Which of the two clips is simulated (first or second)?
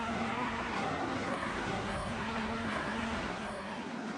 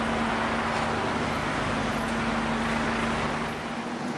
first